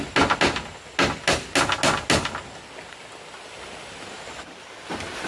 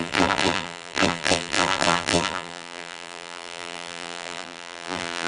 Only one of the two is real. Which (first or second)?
first